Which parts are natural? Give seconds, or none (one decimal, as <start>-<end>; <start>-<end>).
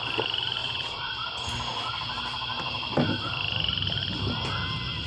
0.0-0.6; 1.1-5.1